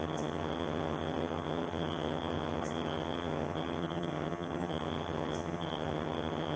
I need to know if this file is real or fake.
fake